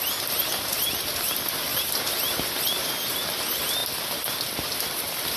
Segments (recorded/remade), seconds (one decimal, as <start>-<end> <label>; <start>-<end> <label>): 0.0-1.7 recorded; 1.7-2.3 remade; 2.3-5.4 recorded